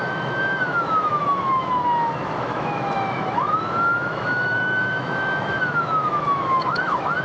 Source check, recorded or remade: remade